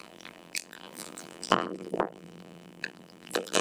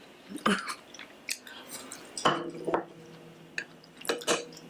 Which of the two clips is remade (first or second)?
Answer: first